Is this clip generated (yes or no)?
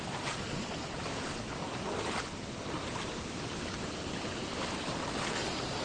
no